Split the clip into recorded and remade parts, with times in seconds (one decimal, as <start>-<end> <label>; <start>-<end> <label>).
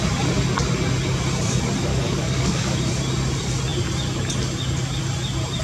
0.0-1.9 recorded; 1.9-2.8 remade; 2.8-5.6 recorded